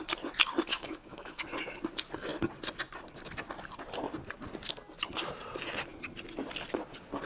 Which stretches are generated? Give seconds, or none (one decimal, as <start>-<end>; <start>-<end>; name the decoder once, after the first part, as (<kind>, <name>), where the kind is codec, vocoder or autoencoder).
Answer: 0.7-1.4 (autoencoder, DAC-VAE)